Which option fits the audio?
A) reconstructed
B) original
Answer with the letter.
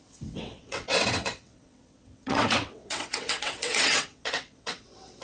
A